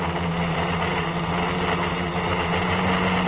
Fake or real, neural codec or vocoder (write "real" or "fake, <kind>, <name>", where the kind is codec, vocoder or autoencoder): real